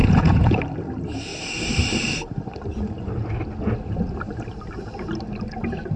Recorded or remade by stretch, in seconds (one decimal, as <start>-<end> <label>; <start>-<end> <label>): 0.0-0.6 remade; 0.6-6.0 recorded